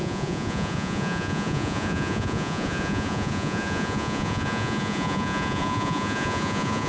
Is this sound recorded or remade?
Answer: remade